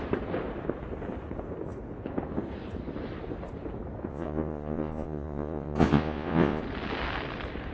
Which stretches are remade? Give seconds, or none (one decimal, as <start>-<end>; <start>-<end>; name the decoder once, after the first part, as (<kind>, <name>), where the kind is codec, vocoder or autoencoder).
4.1-6.6 (vocoder, Vocos)